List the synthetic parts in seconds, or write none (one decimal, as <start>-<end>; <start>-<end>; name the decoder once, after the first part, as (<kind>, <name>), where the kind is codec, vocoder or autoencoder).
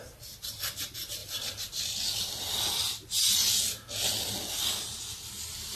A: 1.2-1.8 (vocoder, BigVGAN v2)